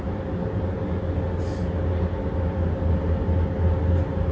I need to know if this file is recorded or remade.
recorded